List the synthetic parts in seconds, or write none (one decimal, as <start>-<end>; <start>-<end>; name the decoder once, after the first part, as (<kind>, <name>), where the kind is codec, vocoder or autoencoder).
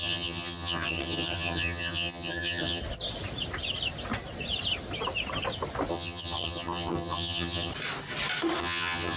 0.0-2.8 (vocoder, HiFi-GAN); 5.9-7.7; 8.6-9.2